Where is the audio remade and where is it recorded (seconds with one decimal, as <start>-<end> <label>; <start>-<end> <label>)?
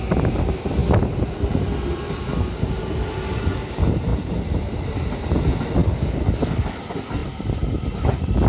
0.0-5.8 recorded; 5.8-6.8 remade; 6.8-8.5 recorded